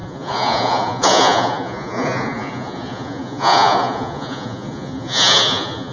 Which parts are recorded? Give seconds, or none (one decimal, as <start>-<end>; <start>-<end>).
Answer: none